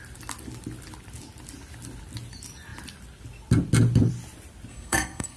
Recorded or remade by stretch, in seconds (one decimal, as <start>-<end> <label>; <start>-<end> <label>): 0.0-4.7 recorded; 4.7-5.4 remade